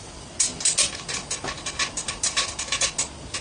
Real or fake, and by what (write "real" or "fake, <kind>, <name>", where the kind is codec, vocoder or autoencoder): real